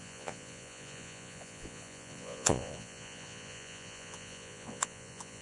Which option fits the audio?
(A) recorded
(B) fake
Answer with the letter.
B